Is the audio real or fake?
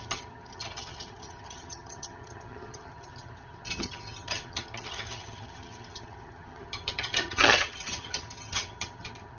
fake